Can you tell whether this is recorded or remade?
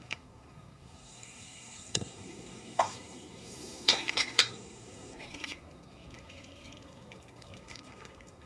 remade